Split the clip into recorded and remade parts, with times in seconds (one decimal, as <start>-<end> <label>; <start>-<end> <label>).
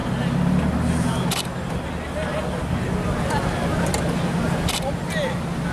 0.0-5.7 recorded